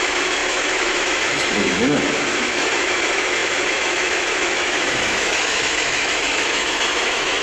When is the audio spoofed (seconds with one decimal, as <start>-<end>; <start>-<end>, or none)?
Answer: 0.0-7.4

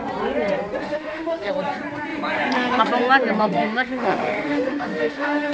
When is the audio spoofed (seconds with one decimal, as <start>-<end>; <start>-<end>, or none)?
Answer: 0.8-1.5; 3.4-5.5

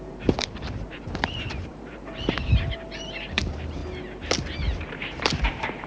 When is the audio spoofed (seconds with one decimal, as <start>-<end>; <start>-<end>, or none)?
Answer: 0.0-3.8; 4.6-5.9